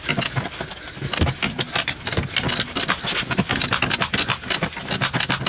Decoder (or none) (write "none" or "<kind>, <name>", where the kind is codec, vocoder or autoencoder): none